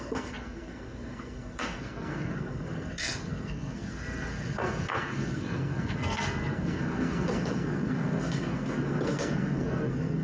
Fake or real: fake